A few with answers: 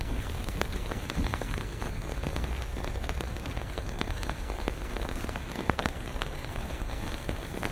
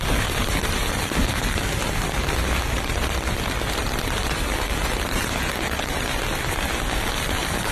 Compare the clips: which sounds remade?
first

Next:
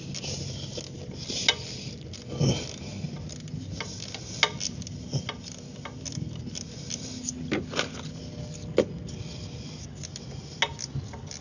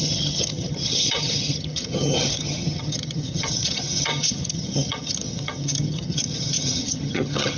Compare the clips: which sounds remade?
second